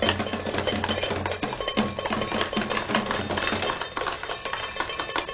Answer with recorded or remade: recorded